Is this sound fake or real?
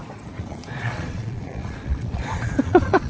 fake